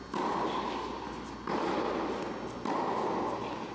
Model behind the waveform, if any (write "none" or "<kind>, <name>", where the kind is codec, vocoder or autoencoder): none